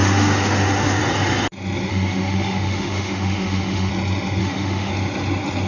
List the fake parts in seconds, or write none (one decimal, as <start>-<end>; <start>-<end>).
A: 0.0-1.0; 1.9-3.9; 4.4-4.9

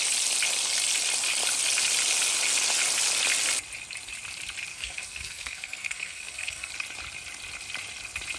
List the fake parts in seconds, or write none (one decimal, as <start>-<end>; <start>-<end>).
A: 4.7-6.7

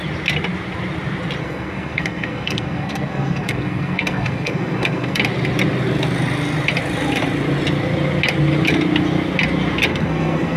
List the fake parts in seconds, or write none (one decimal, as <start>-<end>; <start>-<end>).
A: 1.4-5.2; 9.9-10.6